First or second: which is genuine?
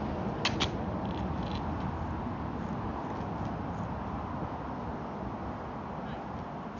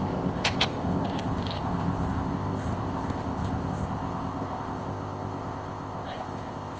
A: first